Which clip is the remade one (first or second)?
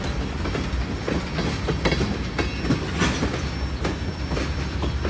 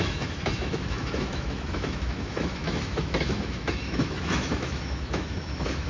second